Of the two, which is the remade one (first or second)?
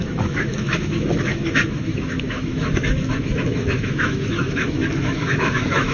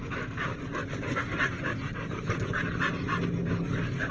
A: first